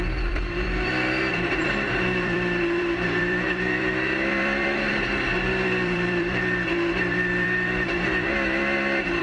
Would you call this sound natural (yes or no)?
no